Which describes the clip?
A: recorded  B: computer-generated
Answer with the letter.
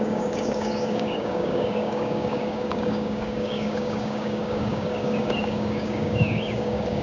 B